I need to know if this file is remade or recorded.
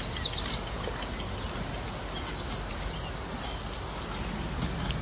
recorded